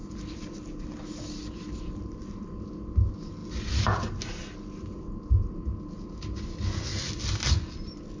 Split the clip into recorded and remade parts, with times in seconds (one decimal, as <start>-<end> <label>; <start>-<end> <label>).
0.0-8.2 recorded